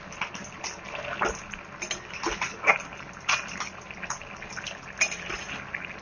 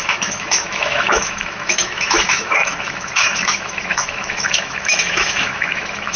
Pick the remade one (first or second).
second